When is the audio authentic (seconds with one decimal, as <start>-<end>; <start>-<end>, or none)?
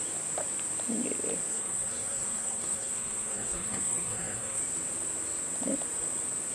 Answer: 0.0-1.5; 4.6-6.5